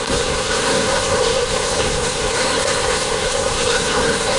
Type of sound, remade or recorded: remade